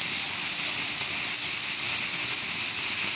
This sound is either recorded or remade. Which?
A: recorded